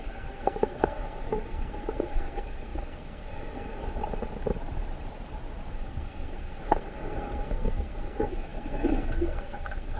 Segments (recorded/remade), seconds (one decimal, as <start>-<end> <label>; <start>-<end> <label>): 0.0-4.0 remade; 4.0-5.7 recorded; 5.7-10.0 remade